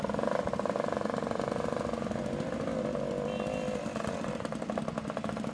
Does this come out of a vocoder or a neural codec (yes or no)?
yes